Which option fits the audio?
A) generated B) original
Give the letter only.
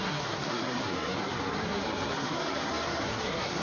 A